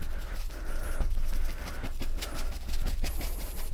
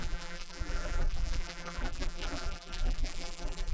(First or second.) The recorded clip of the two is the first